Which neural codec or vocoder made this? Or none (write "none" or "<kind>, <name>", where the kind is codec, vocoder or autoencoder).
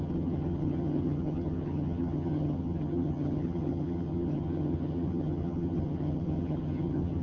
vocoder, HiFi-GAN